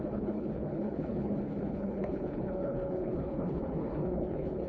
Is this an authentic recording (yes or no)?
no